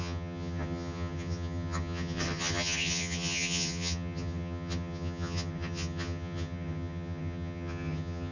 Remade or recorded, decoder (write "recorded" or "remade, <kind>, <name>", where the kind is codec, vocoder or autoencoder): remade, vocoder, HiFi-GAN